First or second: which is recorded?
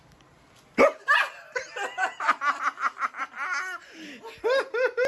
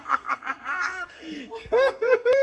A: first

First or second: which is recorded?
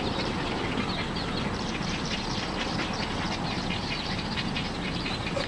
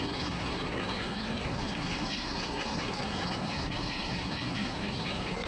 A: first